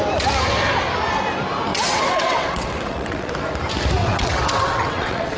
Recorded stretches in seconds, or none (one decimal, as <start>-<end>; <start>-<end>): 0.0-1.7; 3.3-4.0